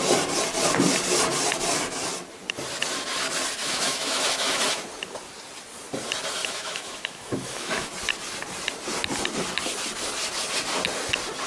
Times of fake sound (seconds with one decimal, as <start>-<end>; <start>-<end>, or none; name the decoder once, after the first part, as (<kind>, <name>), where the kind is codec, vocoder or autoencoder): 3.6-4.8 (autoencoder, DAC-VAE); 6.4-7.9